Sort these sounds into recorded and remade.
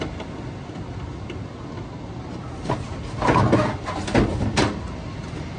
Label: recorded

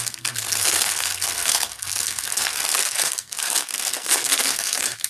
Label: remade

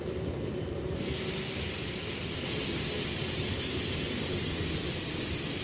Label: recorded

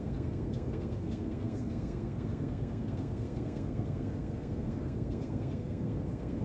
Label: remade